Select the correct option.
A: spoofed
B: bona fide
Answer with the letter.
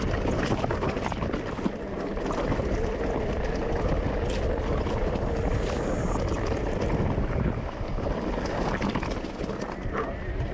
B